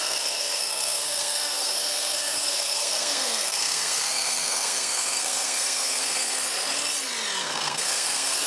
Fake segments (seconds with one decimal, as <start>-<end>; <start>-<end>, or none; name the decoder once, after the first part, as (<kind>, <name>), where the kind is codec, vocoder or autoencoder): 0.0-6.4 (codec, SNAC); 7.4-8.5